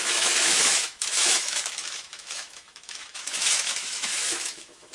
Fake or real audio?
fake